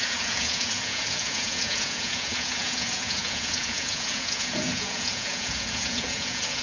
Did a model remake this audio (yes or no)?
yes